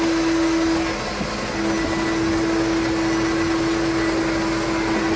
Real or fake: real